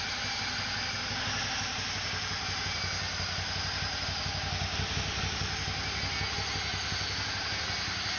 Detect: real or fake real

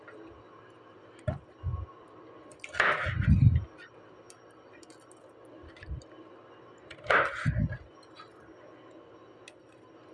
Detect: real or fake real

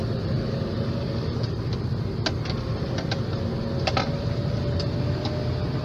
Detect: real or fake real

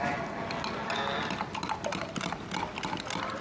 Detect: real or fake real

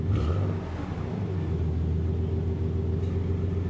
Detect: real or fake real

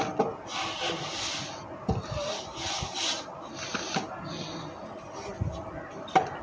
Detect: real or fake real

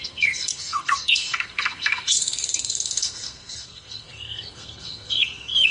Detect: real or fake fake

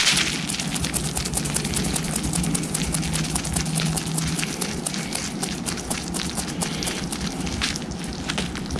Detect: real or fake real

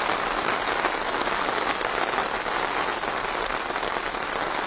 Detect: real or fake real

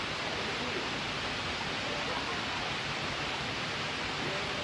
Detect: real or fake real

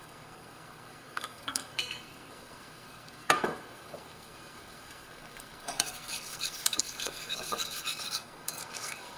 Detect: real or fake fake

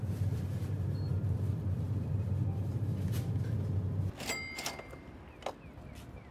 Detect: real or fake real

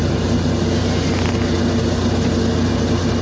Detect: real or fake real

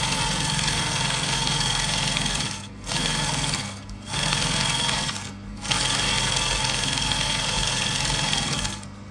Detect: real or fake fake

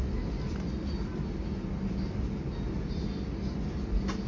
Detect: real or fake real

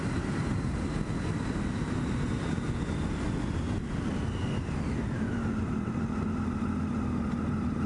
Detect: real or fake real